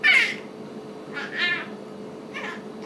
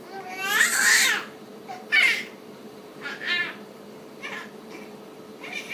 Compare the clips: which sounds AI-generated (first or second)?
second